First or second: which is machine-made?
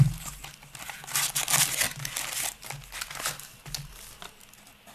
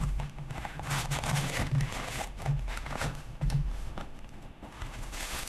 second